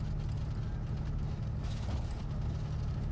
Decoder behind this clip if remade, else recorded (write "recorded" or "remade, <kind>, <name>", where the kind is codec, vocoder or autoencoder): recorded